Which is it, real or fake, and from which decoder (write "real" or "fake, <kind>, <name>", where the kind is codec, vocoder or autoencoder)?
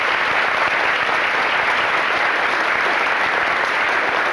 real